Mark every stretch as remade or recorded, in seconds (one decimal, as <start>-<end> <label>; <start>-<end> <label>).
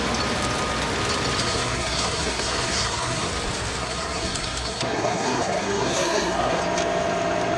0.0-1.4 recorded; 1.4-3.3 remade; 3.3-3.8 recorded; 3.8-6.6 remade; 6.6-7.6 recorded